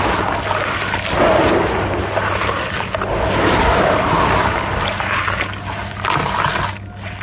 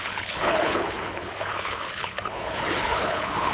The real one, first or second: first